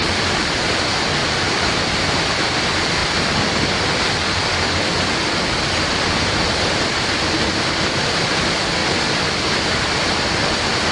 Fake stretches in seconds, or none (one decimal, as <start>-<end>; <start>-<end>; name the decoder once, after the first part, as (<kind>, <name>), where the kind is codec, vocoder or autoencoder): 1.2-1.8 (vocoder, BigVGAN v2)